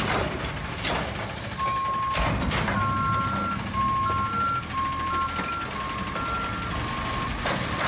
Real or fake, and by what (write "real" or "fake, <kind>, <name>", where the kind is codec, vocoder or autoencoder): real